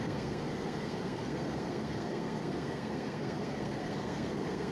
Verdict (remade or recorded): remade